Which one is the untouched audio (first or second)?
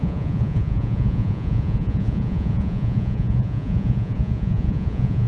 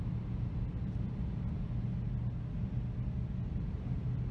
second